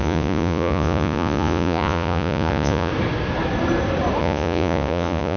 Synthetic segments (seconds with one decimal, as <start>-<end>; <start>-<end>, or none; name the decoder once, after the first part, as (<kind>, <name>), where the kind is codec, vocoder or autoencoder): 0.0-2.9 (vocoder, Vocos); 4.2-5.4